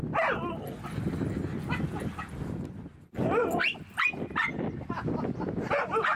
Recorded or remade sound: recorded